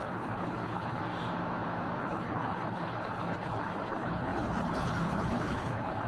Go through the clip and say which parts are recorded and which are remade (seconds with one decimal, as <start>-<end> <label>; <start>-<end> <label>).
0.0-1.0 remade; 1.0-2.0 recorded; 2.0-6.1 remade